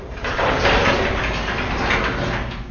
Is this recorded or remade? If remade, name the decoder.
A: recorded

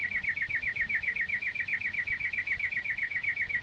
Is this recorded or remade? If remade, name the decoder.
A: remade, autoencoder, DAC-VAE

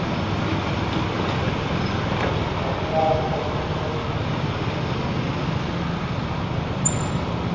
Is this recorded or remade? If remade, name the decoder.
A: recorded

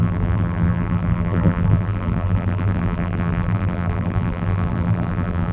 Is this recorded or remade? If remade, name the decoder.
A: remade, vocoder, BigVGAN v2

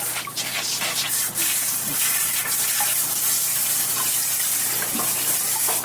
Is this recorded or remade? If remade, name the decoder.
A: recorded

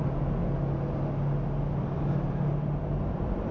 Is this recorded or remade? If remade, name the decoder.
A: recorded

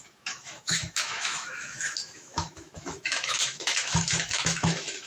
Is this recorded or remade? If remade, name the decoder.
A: remade, autoencoder, DAC-VAE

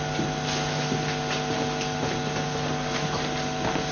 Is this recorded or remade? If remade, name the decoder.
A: recorded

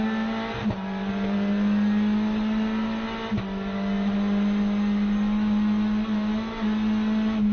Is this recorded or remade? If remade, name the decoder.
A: recorded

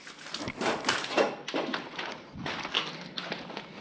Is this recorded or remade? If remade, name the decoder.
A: recorded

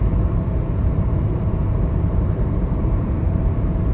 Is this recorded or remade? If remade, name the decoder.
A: remade, vocoder, BigVGAN v2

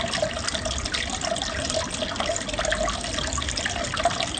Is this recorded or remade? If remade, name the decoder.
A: recorded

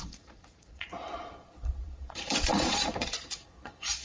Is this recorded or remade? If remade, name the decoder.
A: remade, vocoder, Vocos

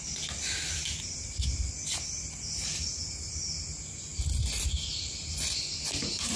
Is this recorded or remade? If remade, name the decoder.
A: recorded